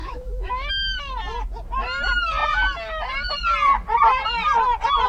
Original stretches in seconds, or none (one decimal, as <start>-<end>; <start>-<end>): 0.7-5.1